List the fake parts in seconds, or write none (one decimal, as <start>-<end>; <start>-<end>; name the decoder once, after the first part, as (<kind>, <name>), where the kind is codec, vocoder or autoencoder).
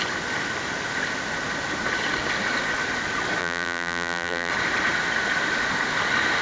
3.4-4.5 (vocoder, BigVGAN v2)